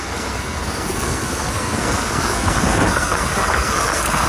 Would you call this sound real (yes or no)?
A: no